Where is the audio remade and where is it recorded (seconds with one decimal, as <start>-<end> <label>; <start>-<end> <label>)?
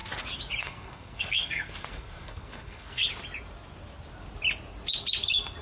0.0-0.6 recorded; 0.6-3.0 remade; 3.0-5.6 recorded